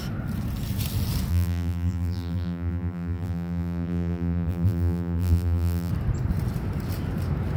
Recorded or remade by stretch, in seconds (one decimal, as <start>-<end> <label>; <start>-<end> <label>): 0.0-1.3 recorded; 1.3-5.9 remade; 5.9-7.6 recorded